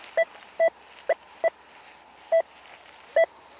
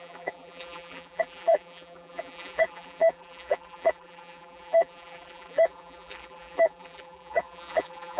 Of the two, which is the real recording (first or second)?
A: first